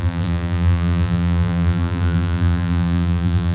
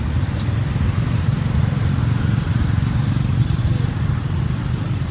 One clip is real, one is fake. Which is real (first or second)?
second